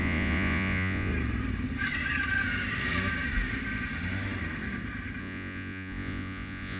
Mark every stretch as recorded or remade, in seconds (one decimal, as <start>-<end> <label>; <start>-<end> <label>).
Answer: 0.0-1.1 remade; 1.1-5.2 recorded; 5.2-6.8 remade